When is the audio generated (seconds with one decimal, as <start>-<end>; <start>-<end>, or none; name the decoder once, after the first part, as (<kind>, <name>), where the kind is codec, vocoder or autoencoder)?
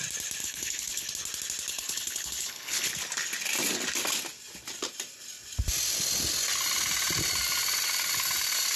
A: 0.4-1.1 (codec, HILCodec); 1.7-2.9